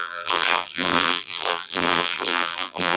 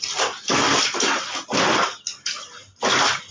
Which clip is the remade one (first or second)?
first